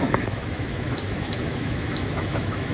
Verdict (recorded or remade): remade